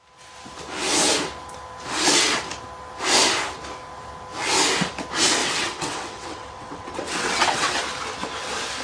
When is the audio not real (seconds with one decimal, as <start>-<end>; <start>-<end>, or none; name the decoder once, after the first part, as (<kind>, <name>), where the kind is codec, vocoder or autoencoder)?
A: 5.4-7.8 (vocoder, WaveNeXt)